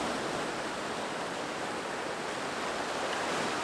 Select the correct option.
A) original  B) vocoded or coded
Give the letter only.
A